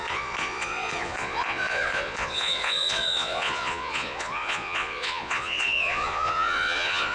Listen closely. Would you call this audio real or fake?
fake